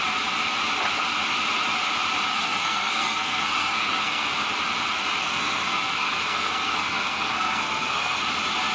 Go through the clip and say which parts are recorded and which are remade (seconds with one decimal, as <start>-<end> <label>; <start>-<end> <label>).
0.0-2.3 recorded; 2.3-4.3 remade; 4.3-5.2 recorded; 5.2-8.2 remade; 8.2-8.7 recorded